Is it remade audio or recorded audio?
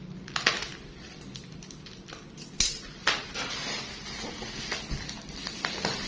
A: recorded